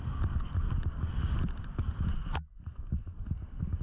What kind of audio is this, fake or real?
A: real